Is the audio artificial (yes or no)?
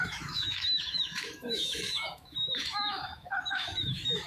yes